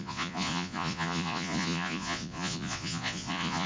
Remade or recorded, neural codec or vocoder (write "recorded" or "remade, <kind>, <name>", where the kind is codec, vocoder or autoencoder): remade, vocoder, Vocos